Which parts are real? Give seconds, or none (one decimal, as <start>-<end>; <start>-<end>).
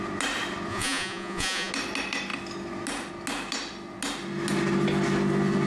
0.0-0.7; 1.7-5.7